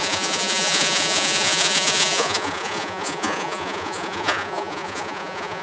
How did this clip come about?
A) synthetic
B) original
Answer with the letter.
A